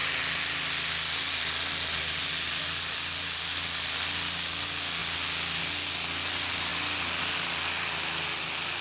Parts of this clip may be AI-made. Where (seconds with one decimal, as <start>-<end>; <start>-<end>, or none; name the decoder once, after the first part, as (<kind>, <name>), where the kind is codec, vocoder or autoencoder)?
none